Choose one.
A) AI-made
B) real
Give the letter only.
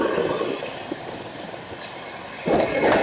B